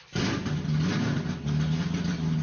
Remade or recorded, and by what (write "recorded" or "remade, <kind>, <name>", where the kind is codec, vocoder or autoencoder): recorded